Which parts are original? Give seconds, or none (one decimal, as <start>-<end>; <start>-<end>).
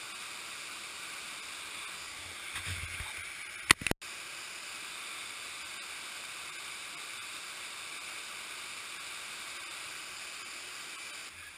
0.0-11.6